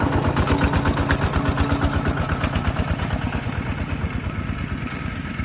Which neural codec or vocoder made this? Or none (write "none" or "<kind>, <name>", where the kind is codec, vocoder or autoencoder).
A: none